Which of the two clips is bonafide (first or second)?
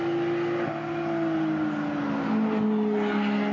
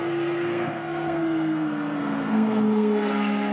first